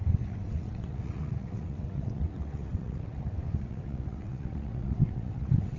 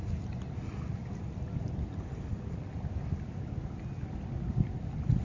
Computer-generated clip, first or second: first